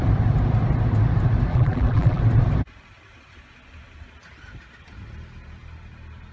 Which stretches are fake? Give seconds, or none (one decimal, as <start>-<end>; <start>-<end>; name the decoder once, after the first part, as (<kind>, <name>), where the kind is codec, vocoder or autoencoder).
1.5-2.2 (vocoder, BigVGAN v2)